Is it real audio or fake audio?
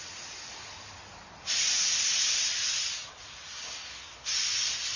real